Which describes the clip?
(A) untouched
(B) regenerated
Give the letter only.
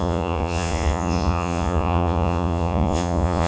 B